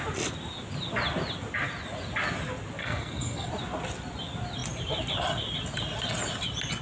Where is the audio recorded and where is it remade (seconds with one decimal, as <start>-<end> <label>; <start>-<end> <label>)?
0.0-2.8 recorded; 2.8-3.5 remade; 3.5-6.8 recorded